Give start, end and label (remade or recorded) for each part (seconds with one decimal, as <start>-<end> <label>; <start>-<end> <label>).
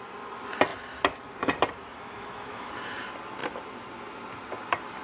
0.0-1.9 recorded; 1.9-2.7 remade; 2.7-5.0 recorded